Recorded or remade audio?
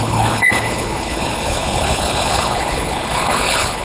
remade